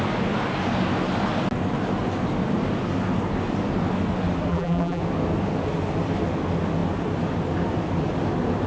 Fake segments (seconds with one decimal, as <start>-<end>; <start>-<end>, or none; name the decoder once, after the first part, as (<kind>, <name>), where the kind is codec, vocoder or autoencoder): 4.5-5.0 (vocoder, BigVGAN v2)